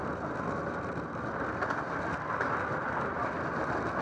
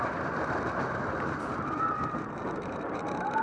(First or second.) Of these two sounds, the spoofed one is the second